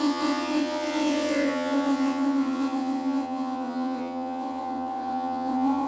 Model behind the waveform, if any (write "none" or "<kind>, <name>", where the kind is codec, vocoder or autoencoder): vocoder, WaveNeXt